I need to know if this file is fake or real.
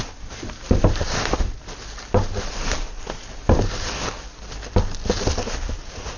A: real